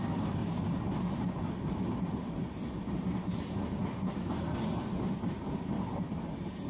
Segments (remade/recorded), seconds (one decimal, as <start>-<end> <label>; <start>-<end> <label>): 0.0-6.7 recorded